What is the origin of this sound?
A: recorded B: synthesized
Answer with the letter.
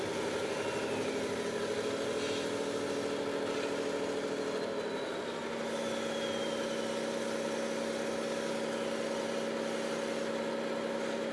A